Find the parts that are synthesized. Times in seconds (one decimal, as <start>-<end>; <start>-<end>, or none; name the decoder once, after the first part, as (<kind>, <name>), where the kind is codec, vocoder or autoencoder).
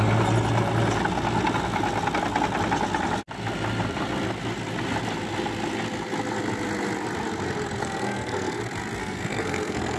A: 7.8-8.6 (codec, SNAC); 9.0-10.0